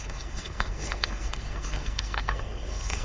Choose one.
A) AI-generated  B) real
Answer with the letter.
A